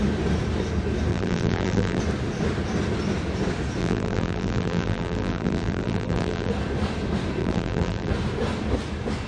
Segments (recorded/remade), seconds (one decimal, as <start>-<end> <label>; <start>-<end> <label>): 0.0-1.1 recorded; 1.1-2.0 remade; 2.0-3.8 recorded; 3.8-6.5 remade; 6.5-7.4 recorded; 7.4-8.1 remade; 8.1-9.3 recorded